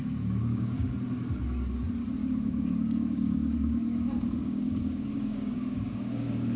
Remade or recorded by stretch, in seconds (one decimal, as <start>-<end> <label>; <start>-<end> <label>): 0.0-0.4 recorded; 0.4-0.9 remade; 0.9-2.2 recorded; 2.2-6.6 remade